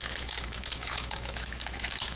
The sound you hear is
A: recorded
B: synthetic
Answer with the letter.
B